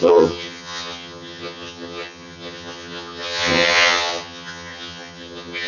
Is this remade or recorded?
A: remade